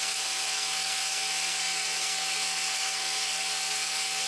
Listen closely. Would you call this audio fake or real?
fake